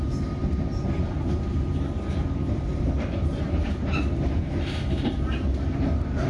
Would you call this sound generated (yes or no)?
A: yes